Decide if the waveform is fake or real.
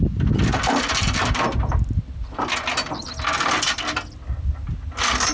real